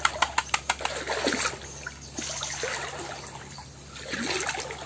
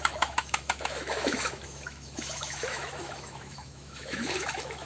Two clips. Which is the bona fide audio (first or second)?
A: first